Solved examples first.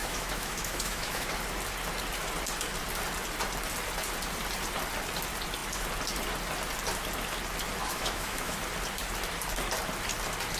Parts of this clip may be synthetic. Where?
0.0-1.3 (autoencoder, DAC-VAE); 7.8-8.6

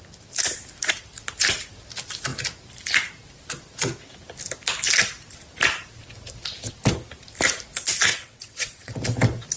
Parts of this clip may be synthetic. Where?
8.1-8.9 (vocoder, WaveNeXt)

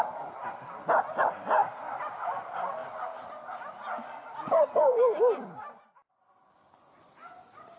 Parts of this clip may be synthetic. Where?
none

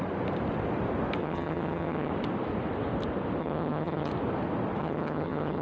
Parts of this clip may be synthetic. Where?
1.2-2.1 (vocoder, HiFi-GAN); 3.4-4.1; 4.8-5.6

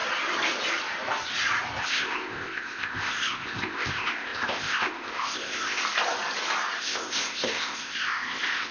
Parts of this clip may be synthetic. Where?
1.8-5.8 (codec, ZipCodec); 6.8-8.7